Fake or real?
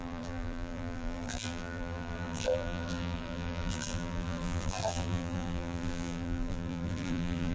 fake